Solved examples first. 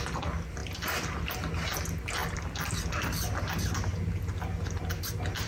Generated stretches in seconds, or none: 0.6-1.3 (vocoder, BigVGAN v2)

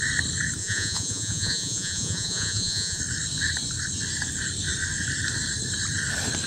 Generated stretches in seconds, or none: 0.6-3.0 (vocoder, Vocos)

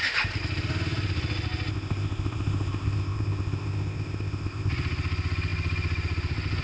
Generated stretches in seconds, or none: 1.7-4.7 (codec, ZipCodec)

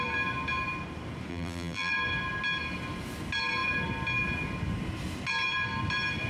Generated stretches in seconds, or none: 1.3-1.9 (vocoder, BigVGAN v2)

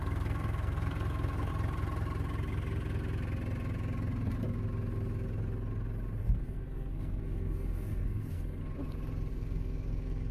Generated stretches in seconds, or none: 0.0-1.5 (codec, SNAC); 6.2-8.6; 9.3-10.3

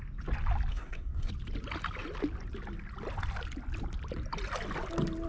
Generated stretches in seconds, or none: 0.7-1.3 (codec, SNAC)

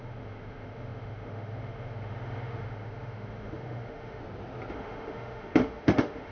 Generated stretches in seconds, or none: 0.0-4.2 (autoencoder, DAC-VAE); 4.7-6.3